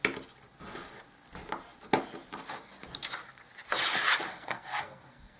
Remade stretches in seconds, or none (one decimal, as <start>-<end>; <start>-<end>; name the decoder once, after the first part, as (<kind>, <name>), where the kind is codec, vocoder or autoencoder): 4.3-5.4 (codec, SNAC)